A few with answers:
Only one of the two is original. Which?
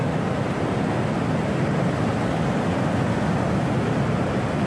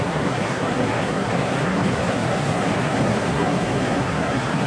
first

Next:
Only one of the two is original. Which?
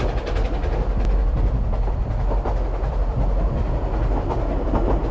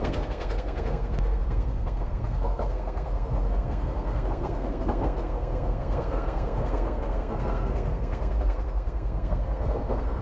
first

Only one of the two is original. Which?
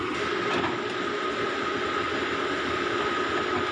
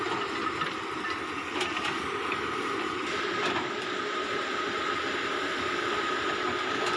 first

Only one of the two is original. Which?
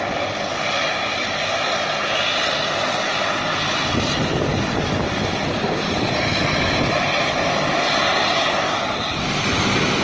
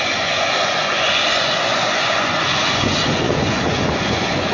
first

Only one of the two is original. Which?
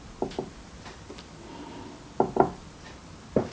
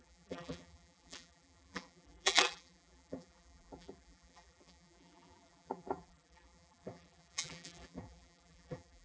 first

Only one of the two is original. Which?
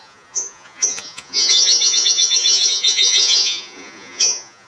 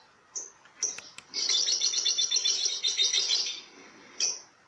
second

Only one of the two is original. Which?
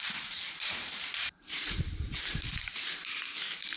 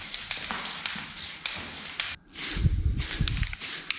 second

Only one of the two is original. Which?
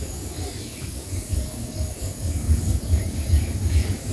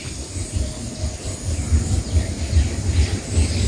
second